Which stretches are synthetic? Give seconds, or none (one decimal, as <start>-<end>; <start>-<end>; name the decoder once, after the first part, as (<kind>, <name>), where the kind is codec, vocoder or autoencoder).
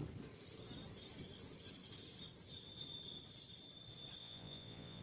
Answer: 4.2-5.0 (vocoder, Vocos)